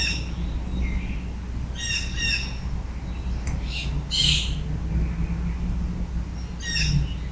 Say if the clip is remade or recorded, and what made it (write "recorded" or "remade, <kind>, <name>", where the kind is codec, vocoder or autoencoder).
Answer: recorded